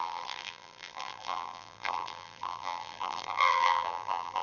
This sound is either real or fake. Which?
fake